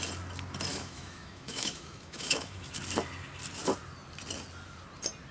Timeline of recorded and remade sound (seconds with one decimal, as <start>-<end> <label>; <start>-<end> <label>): 0.0-0.7 recorded; 0.7-2.7 remade; 2.7-5.3 recorded